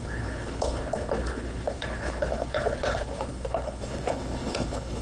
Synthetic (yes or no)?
yes